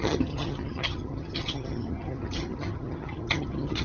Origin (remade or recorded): remade